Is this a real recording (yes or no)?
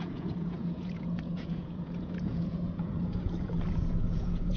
no